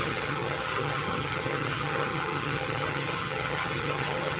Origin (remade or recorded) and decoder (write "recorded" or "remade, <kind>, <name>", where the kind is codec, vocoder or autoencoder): remade, vocoder, HiFi-GAN